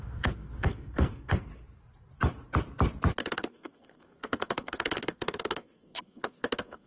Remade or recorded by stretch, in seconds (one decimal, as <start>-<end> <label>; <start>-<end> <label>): 0.0-1.5 remade; 1.5-3.2 recorded; 3.2-6.9 remade